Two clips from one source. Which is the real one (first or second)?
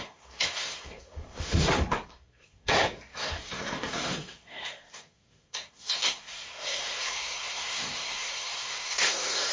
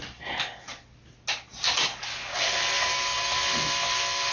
second